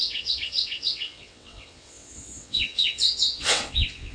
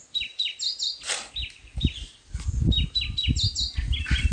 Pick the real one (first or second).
second